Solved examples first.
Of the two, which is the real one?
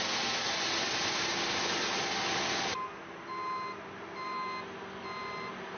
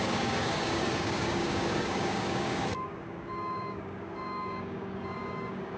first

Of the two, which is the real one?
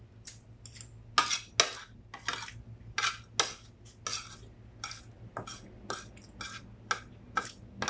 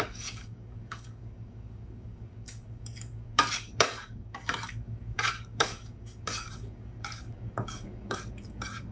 first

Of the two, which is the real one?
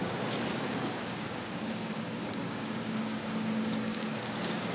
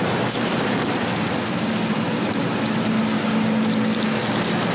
second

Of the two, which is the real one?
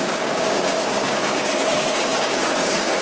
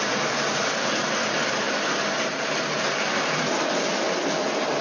second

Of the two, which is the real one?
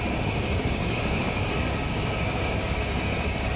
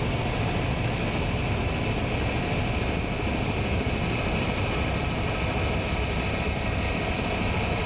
second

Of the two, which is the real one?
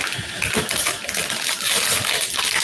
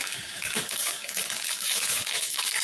first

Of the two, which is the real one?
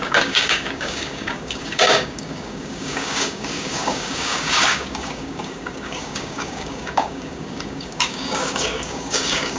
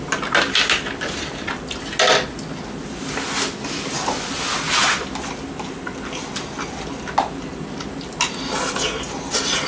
second